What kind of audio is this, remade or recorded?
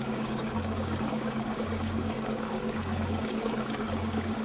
remade